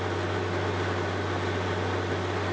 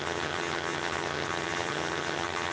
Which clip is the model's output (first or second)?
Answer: second